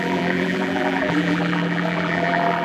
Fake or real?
fake